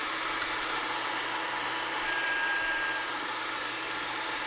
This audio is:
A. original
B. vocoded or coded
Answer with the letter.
A